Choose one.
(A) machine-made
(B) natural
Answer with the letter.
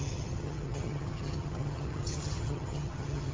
A